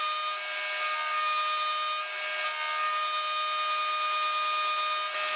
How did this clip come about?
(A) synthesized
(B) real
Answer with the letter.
B